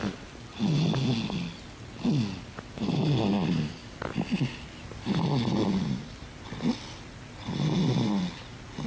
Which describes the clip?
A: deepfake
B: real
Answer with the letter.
B